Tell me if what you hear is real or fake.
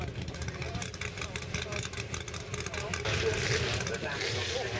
real